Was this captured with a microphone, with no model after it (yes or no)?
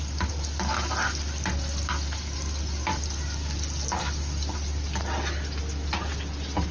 yes